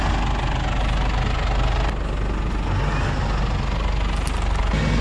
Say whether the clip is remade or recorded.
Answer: recorded